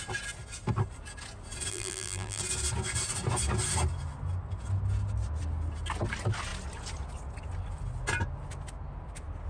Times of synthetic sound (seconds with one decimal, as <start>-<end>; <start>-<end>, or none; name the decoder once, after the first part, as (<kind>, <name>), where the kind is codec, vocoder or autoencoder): 1.7-2.4 (vocoder, BigVGAN v2)